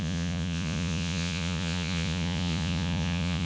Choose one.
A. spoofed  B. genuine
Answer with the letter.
A